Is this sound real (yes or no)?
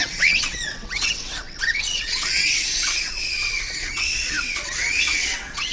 no